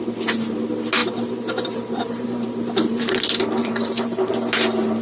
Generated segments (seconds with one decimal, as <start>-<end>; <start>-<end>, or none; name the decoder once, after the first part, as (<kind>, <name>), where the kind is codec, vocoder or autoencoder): 1.0-3.1 (vocoder, BigVGAN v2); 3.6-4.3